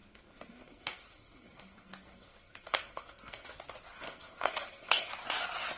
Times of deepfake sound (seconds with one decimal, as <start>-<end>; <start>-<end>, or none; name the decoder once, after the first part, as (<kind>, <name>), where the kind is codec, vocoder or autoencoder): 0.0-3.5 (codec, SNAC); 3.9-5.1